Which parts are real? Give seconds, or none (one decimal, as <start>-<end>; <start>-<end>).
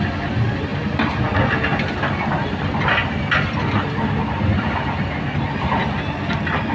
0.0-6.7